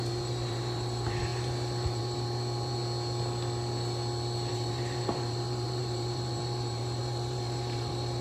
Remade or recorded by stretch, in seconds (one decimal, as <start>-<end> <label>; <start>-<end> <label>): 0.0-2.8 remade; 2.8-4.5 recorded; 4.5-8.2 remade